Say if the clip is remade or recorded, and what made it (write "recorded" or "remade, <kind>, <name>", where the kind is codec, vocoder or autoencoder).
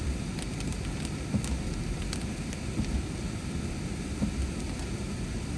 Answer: recorded